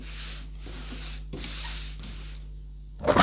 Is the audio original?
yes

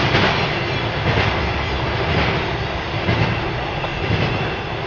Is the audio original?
yes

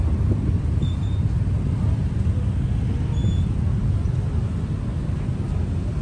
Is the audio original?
yes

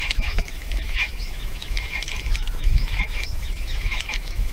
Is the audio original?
no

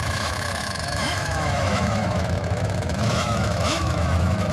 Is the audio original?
no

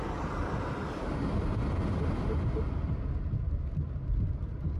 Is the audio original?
yes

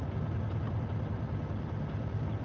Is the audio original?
yes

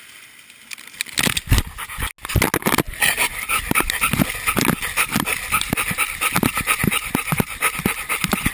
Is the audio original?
yes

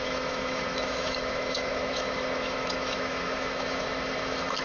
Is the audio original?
no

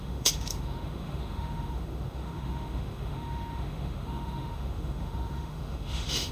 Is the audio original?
no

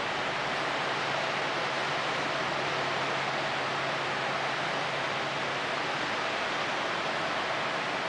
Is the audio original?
yes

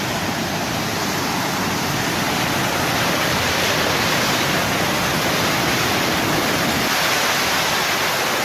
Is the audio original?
yes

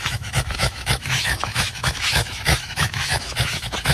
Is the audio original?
no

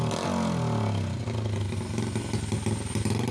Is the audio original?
yes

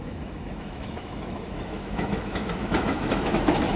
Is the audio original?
no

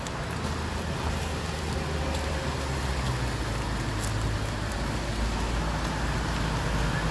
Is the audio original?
yes